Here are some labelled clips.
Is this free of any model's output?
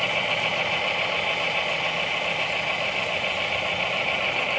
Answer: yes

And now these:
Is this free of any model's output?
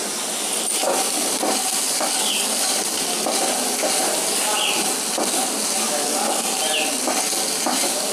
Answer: yes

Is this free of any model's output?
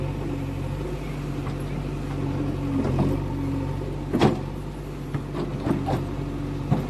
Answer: yes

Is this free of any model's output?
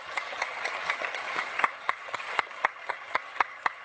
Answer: no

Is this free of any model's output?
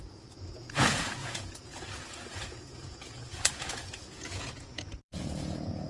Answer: no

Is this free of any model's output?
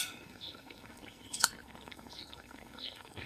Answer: no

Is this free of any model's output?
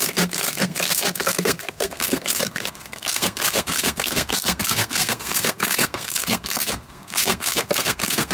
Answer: no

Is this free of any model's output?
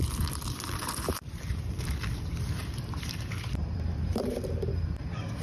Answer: no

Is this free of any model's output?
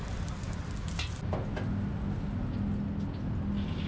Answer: yes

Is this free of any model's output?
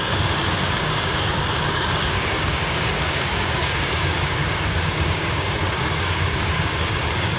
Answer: no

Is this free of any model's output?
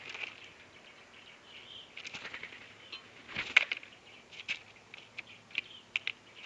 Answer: yes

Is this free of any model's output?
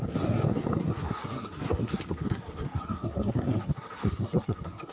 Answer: no